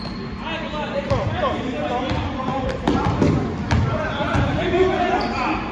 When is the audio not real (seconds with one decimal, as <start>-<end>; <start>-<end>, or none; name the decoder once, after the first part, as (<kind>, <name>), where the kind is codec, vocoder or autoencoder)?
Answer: none